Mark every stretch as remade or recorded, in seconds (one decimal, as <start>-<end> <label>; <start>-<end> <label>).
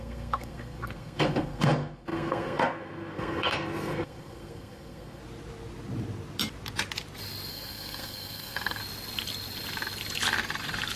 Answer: 0.0-5.2 remade; 5.2-7.5 recorded; 7.5-8.8 remade; 8.8-11.0 recorded